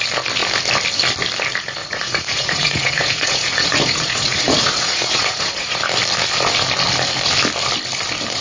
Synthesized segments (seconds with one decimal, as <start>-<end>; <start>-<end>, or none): 1.8-5.8